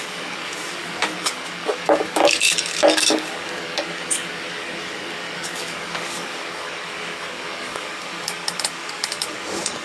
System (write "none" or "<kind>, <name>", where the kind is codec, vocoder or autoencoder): codec, DAC